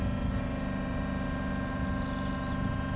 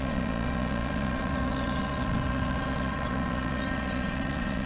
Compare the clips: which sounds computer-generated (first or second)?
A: second